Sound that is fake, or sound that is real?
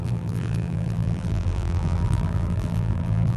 fake